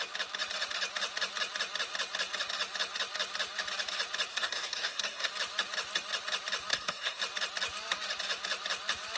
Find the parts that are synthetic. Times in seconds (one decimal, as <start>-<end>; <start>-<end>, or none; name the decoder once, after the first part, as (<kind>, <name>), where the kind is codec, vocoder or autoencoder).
4.3-5.3 (codec, SNAC); 6.7-7.2